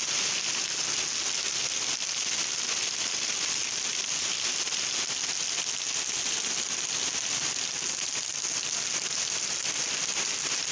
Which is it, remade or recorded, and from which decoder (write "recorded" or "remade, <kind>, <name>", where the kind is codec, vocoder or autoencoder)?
recorded